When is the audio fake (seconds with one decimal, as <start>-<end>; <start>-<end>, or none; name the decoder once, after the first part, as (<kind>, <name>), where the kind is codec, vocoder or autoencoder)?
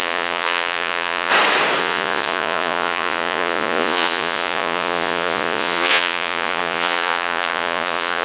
0.0-1.3 (vocoder, Vocos); 1.8-8.2